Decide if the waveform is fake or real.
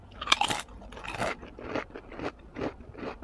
real